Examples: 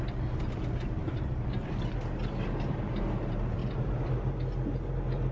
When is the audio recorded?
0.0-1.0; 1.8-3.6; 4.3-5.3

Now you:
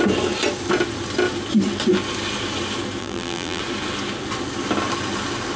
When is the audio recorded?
0.0-3.0; 3.6-5.6

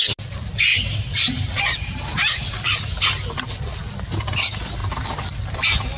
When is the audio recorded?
0.0-0.7; 3.0-6.0

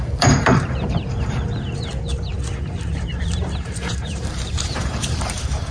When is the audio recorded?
1.9-2.6

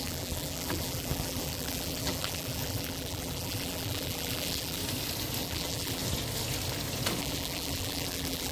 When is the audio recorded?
4.8-5.4; 6.0-7.2

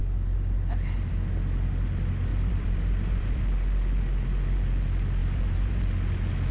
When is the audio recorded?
0.0-2.3; 3.4-5.2; 5.8-6.5